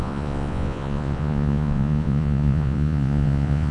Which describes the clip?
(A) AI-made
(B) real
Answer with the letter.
A